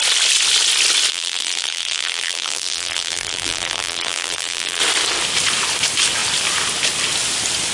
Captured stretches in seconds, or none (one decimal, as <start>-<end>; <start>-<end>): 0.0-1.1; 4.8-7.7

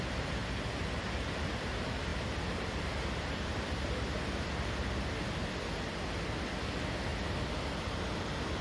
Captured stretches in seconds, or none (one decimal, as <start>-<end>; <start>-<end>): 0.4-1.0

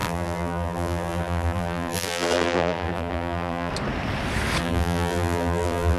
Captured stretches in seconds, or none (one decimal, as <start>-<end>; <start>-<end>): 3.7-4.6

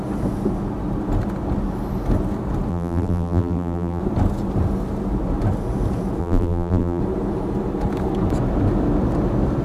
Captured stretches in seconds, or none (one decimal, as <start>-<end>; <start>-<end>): 0.0-2.7; 4.0-6.2; 7.0-9.6